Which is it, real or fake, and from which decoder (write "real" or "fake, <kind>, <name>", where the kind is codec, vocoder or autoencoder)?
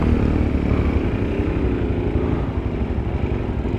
real